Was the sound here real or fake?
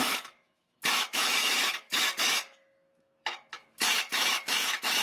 fake